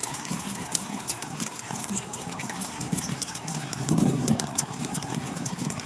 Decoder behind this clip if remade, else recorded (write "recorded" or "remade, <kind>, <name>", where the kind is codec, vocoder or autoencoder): remade, codec, SNAC